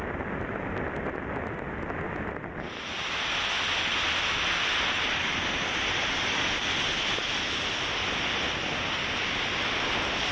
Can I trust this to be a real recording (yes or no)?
yes